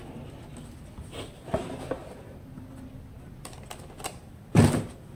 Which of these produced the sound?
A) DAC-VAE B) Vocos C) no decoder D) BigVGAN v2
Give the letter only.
C